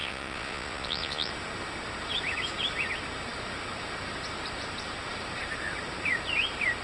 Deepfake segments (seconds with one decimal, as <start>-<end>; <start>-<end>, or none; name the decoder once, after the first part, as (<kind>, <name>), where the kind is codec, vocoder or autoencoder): 0.0-1.3 (vocoder, Vocos)